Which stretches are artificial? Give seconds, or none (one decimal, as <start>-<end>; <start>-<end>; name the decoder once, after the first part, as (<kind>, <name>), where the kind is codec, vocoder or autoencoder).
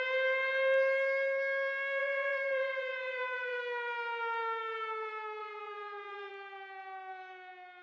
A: 2.0-3.6 (vocoder, Vocos); 5.4-6.3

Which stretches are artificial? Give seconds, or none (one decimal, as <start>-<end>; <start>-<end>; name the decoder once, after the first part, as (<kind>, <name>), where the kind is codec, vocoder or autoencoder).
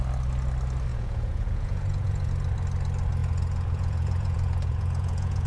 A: 0.9-2.3 (vocoder, Vocos); 3.2-5.5